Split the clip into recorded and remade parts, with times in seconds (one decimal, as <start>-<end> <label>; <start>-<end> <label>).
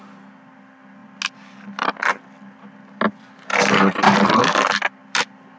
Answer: 0.0-5.6 recorded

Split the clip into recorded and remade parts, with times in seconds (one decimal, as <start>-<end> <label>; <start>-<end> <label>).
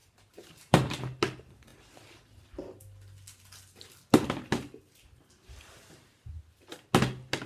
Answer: 0.0-1.0 remade; 1.0-7.5 recorded